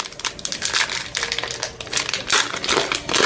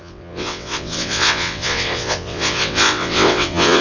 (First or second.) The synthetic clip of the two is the second